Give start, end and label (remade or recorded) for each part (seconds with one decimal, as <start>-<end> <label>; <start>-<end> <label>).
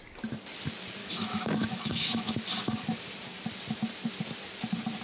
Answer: 0.0-1.0 recorded; 1.0-2.3 remade; 2.3-5.0 recorded